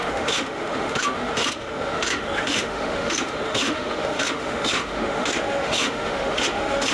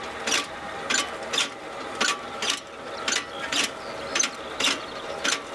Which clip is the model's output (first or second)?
first